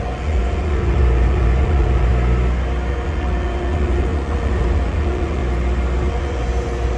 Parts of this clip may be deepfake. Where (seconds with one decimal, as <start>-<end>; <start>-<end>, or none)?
0.0-2.1; 2.9-5.4; 6.0-7.0